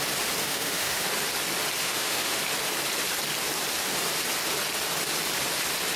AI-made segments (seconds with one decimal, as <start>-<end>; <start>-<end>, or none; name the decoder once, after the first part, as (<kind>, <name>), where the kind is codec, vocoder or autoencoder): 0.4-1.1 (autoencoder, DAC-VAE); 1.8-2.4

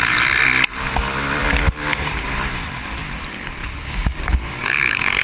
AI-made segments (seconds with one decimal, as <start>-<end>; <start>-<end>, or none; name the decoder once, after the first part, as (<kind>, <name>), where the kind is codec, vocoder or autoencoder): 3.6-5.2 (codec, DAC)